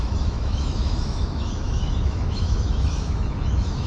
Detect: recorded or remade remade